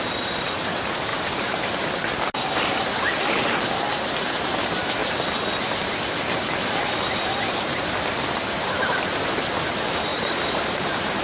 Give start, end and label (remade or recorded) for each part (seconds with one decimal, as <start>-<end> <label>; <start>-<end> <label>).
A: 0.0-1.1 recorded; 1.1-1.6 remade; 1.6-10.1 recorded; 10.1-11.2 remade